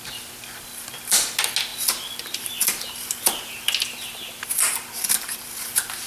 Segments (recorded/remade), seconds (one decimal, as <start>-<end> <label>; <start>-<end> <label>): 0.0-6.1 recorded